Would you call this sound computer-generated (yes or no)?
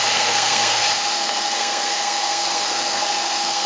yes